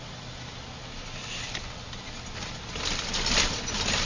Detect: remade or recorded recorded